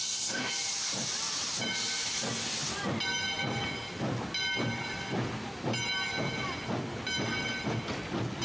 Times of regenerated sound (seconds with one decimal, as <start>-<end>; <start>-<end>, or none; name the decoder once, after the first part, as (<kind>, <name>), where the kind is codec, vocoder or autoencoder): 0.0-0.5 (codec, SNAC)